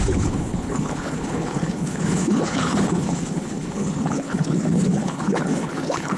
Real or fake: fake